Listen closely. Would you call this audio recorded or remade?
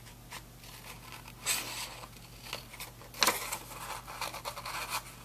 recorded